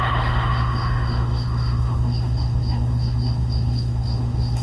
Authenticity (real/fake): fake